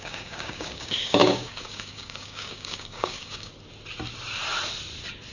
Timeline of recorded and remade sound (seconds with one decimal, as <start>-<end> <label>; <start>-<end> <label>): 0.0-3.5 remade; 3.5-5.3 recorded